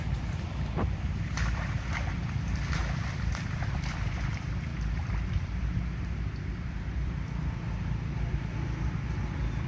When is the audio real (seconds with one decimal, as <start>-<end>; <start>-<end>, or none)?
none